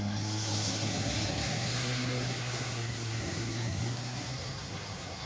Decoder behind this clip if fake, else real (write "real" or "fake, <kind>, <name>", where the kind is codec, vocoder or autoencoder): fake, codec, SNAC